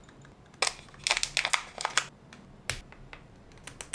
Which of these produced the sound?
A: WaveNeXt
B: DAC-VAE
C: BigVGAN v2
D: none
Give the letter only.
D